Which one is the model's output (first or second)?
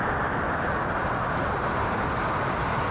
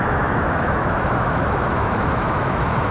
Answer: second